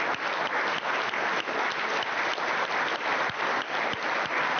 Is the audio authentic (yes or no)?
yes